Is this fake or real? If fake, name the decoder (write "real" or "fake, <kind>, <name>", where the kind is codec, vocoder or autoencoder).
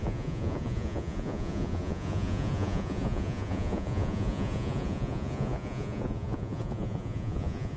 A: fake, vocoder, Vocos